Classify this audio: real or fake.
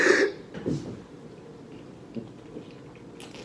real